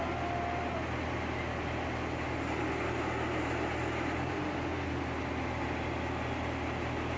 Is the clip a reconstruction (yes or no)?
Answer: no